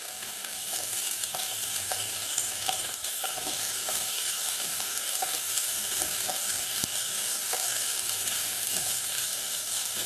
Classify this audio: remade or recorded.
remade